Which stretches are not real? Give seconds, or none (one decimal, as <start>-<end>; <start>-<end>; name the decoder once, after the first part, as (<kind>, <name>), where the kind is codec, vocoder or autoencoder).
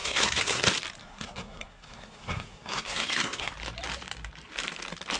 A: 0.0-0.6 (codec, SNAC); 1.0-3.5